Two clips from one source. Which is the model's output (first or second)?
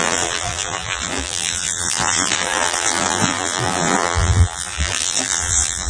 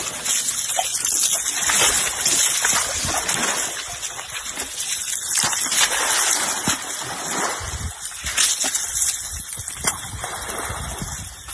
first